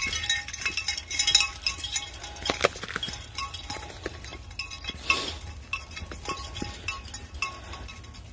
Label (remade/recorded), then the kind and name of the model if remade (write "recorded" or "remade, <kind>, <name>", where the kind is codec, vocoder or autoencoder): recorded